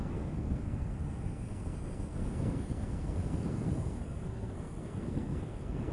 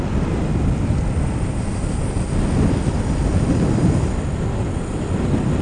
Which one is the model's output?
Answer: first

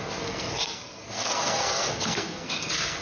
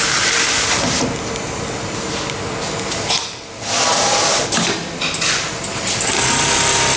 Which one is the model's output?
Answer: first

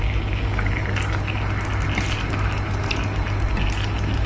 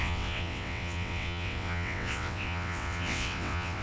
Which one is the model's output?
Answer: second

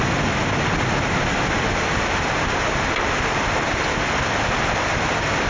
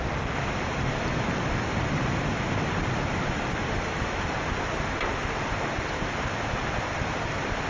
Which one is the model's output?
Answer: second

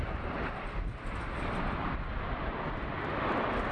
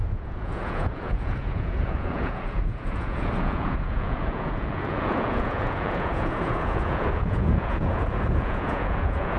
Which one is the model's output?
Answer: second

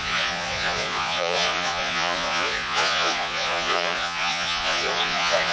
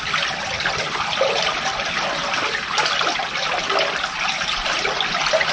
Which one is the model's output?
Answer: first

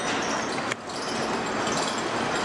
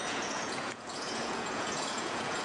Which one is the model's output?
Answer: second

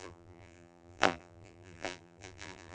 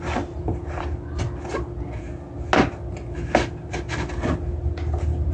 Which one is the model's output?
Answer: first